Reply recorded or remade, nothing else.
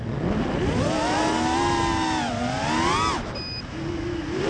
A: recorded